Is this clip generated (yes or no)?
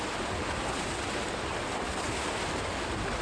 no